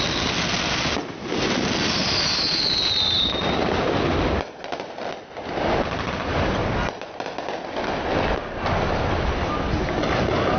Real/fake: real